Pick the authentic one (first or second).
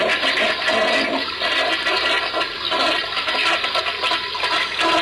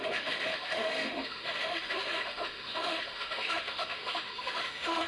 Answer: first